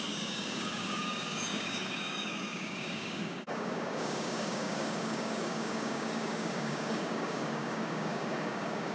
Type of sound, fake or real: fake